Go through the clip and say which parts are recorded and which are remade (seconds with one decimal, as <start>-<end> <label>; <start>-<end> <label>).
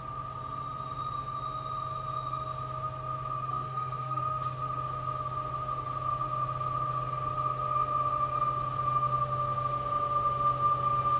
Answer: 0.0-3.5 recorded; 3.5-4.2 remade; 4.2-11.2 recorded